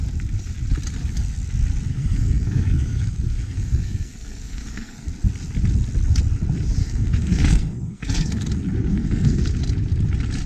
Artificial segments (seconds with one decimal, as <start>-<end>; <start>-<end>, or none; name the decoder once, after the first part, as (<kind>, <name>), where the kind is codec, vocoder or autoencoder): 1.9-5.1 (codec, SNAC); 6.8-8.5; 8.9-9.4